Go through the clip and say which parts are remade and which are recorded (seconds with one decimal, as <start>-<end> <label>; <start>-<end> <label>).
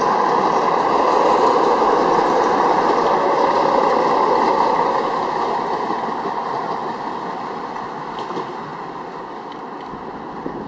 0.0-10.7 recorded